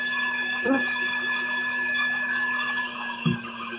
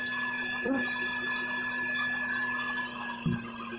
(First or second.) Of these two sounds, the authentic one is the second